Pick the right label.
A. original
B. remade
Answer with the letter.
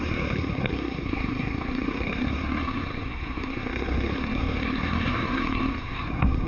B